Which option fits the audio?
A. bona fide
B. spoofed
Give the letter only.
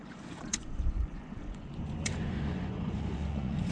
B